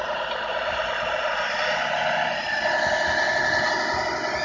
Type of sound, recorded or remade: recorded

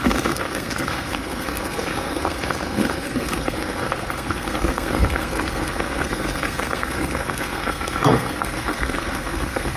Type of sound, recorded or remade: remade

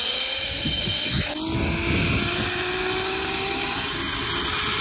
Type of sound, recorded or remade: recorded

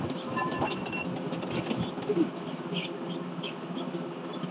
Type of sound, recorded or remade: recorded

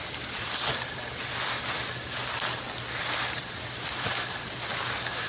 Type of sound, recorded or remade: recorded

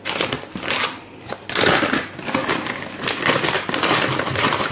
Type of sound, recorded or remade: recorded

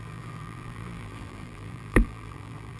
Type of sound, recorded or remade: remade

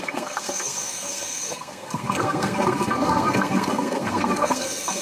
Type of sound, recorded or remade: remade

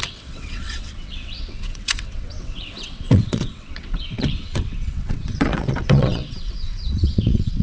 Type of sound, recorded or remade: remade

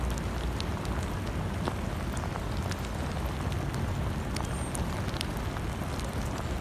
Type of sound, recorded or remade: recorded